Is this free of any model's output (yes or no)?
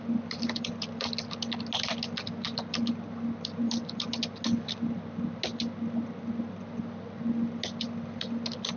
yes